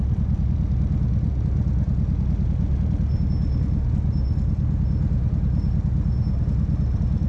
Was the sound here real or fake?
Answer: real